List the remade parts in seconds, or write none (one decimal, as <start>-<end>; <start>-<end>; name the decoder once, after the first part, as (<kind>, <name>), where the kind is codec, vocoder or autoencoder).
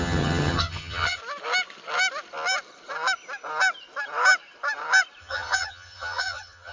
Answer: 0.0-1.2 (vocoder, HiFi-GAN); 5.2-6.7